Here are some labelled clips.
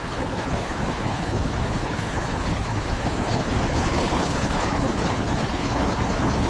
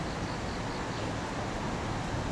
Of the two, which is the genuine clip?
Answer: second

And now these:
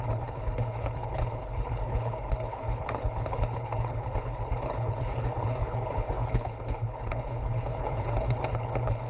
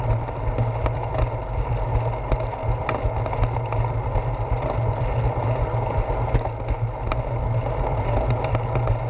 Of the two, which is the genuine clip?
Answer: second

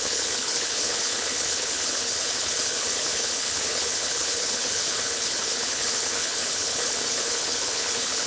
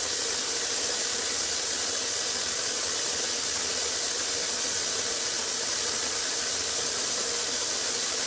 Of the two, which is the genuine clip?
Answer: second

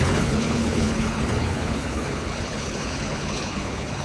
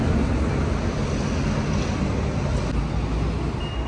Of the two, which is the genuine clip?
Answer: second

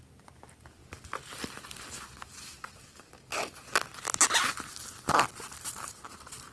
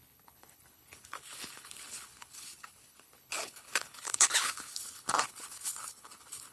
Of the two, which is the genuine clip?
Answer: first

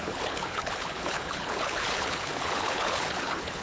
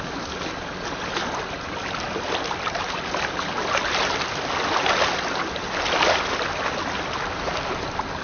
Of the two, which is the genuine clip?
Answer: second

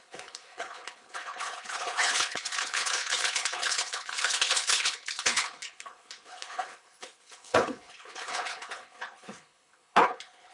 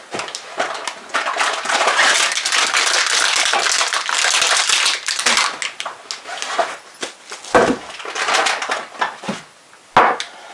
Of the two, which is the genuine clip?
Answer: second